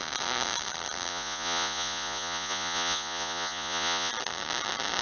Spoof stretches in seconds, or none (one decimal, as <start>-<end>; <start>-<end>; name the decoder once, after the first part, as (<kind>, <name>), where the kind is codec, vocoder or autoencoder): 1.1-4.1 (vocoder, Vocos)